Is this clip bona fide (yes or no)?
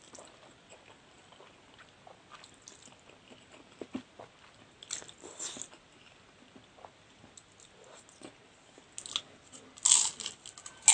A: yes